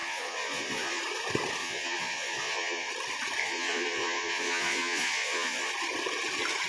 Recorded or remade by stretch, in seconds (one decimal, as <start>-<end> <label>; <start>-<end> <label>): 0.0-1.0 remade; 1.0-1.6 recorded; 1.6-2.9 remade; 2.9-3.4 recorded; 3.4-5.7 remade; 5.7-6.7 recorded